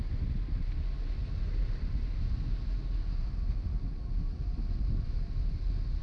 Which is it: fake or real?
real